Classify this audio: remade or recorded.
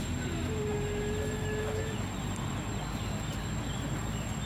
recorded